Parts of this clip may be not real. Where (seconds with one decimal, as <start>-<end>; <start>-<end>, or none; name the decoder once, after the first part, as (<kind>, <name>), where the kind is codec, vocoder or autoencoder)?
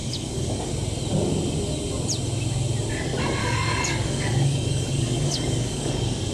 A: 0.0-0.7 (codec, DAC); 3.4-6.3